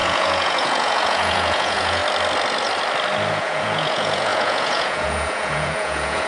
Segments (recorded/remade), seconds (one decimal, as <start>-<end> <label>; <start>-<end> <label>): 0.0-2.0 remade; 2.0-3.3 recorded; 3.3-6.3 remade